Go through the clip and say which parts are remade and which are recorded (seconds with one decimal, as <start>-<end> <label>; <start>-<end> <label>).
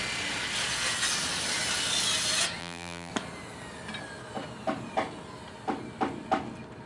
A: 0.0-2.6 recorded; 2.6-3.1 remade; 3.1-6.9 recorded